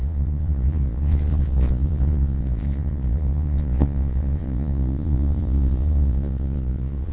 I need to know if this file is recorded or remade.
remade